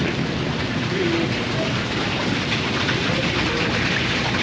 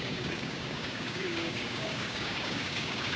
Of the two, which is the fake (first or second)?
second